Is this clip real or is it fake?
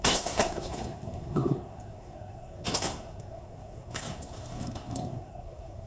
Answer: fake